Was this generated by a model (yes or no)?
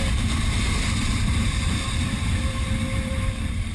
yes